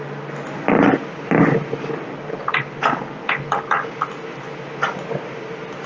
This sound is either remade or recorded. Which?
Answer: recorded